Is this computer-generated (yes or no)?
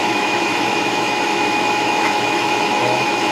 yes